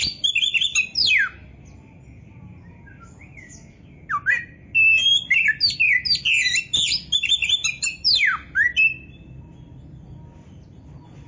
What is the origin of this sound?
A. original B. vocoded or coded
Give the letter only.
A